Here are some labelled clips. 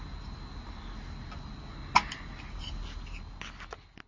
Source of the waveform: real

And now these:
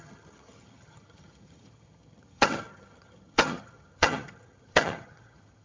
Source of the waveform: fake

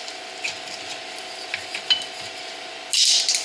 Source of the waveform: real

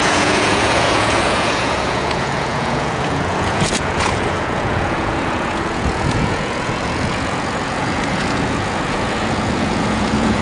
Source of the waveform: fake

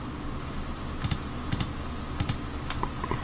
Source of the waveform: real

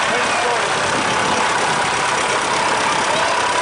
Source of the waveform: real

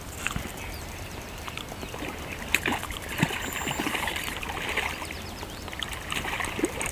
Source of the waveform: real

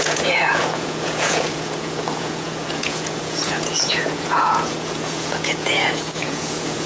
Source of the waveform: fake